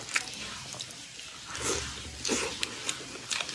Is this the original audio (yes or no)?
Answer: yes